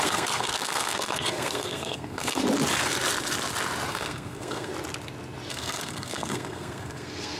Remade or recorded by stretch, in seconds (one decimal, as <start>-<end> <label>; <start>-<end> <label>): 0.0-2.4 remade; 2.4-3.9 recorded; 3.9-4.7 remade; 4.7-5.5 recorded; 5.5-7.4 remade